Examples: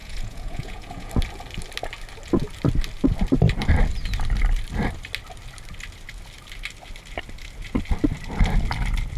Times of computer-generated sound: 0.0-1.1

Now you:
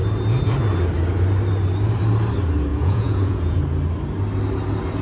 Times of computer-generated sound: 2.7-3.6

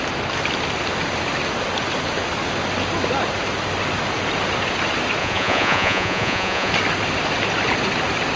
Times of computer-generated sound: 5.2-6.7

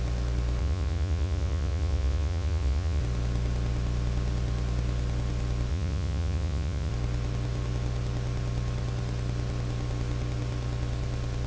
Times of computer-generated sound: 0.6-3.0; 5.7-6.9

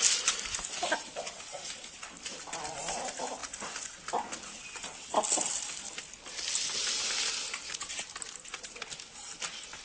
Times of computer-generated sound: none

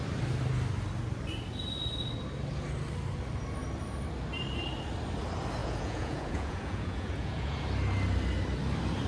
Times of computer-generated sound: 5.6-7.6